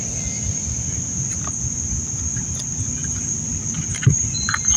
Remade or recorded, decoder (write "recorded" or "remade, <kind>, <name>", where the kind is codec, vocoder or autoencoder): recorded